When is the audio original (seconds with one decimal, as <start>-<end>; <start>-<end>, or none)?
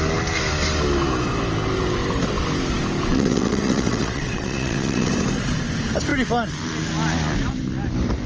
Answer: 0.0-3.1; 5.1-8.3